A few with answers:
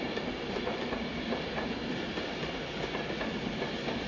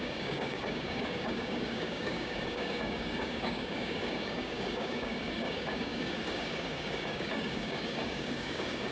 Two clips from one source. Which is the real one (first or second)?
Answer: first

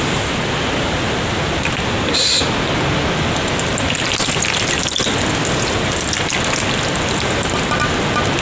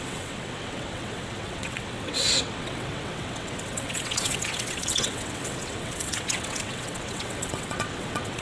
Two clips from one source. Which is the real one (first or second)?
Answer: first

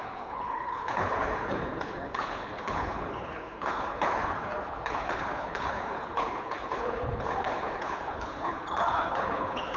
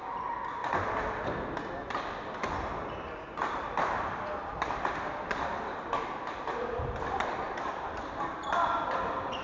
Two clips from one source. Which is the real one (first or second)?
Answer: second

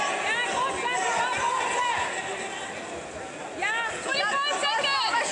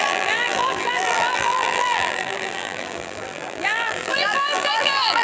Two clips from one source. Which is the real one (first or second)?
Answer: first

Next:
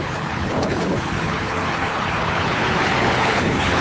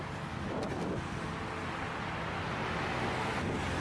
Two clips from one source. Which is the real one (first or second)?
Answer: second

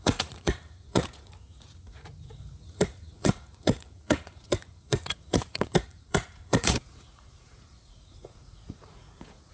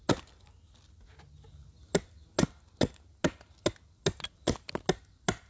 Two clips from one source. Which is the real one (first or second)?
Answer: second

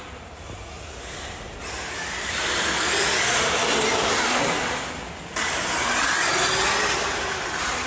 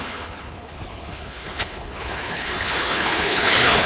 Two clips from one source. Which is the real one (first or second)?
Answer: first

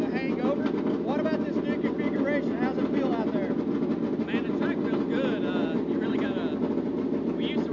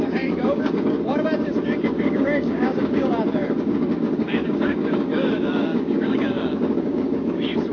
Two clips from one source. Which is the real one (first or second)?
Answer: first